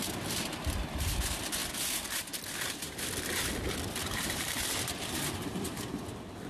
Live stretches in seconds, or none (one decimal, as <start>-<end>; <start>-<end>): 0.0-4.0; 4.7-6.5